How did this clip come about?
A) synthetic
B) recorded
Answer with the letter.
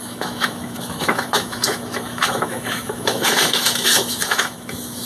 A